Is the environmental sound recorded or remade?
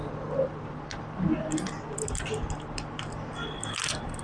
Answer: recorded